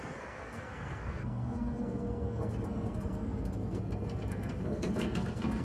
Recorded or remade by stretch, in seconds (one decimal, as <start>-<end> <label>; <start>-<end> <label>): 0.0-5.6 remade

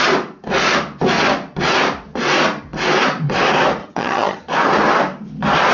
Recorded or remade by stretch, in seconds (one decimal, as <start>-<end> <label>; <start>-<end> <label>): 0.0-3.8 recorded; 3.8-4.4 remade; 4.4-5.7 recorded

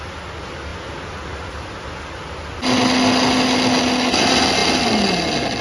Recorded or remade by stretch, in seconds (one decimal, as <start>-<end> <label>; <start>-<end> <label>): 0.0-5.6 recorded

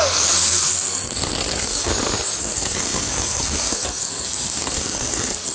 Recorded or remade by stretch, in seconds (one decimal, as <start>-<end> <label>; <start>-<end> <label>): 0.0-1.9 remade; 1.9-2.4 recorded; 2.4-5.5 remade

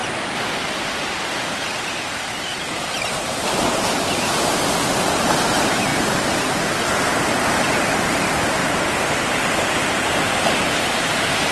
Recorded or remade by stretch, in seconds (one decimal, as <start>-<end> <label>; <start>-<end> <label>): 0.0-0.7 recorded; 0.7-11.5 remade

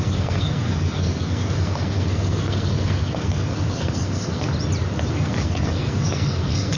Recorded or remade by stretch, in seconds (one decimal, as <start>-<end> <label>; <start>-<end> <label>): 0.0-4.5 remade; 4.5-5.1 recorded; 5.1-6.8 remade

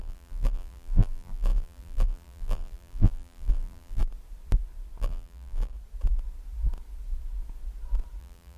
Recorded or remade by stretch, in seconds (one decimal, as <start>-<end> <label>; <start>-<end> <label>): 0.0-4.0 remade; 4.0-5.0 recorded; 5.0-5.7 remade; 5.7-8.2 recorded; 8.2-8.6 remade